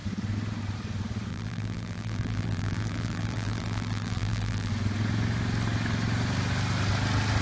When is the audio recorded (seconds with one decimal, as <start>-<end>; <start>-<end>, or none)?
0.0-1.3; 4.7-7.4